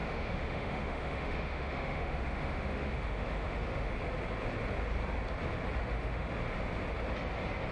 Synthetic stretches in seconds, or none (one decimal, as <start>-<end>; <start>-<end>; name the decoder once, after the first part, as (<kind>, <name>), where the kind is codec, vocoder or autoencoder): 0.0-3.9 (autoencoder, DAC-VAE); 5.8-6.3